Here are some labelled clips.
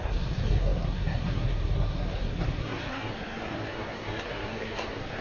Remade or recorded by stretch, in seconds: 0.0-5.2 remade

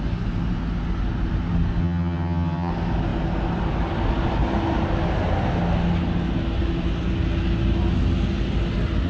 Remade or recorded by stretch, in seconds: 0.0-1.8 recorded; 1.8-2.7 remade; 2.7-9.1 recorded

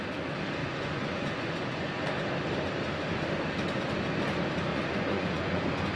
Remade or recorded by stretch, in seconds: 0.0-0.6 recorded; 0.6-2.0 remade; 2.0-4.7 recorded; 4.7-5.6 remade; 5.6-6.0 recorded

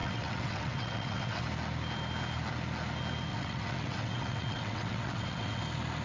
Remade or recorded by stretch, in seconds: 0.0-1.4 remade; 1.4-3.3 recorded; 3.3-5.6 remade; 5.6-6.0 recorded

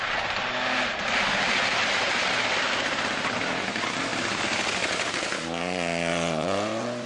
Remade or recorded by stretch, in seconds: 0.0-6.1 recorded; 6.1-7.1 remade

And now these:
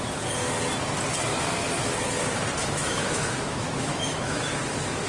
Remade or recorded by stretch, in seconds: 0.0-1.3 recorded; 1.3-2.1 remade; 2.1-2.6 recorded; 2.6-5.1 remade